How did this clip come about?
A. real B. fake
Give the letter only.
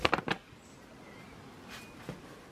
A